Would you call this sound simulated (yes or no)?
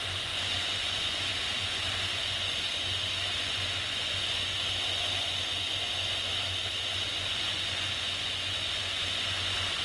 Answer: yes